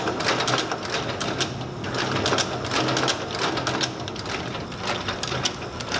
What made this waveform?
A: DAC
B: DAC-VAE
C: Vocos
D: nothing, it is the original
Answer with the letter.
D